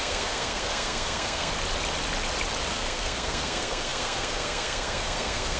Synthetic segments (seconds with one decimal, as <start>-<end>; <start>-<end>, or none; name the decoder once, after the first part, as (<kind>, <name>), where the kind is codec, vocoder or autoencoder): 0.0-1.5 (codec, SNAC); 2.7-5.6